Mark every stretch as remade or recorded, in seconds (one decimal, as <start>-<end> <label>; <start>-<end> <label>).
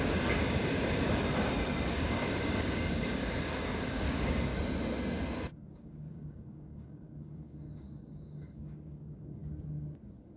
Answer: 0.0-1.2 remade; 1.2-1.9 recorded; 1.9-4.5 remade; 4.5-5.7 recorded; 5.7-9.4 remade; 9.4-10.4 recorded